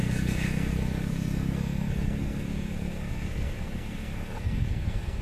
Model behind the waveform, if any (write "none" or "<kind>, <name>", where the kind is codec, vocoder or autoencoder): codec, SNAC